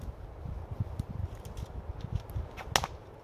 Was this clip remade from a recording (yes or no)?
no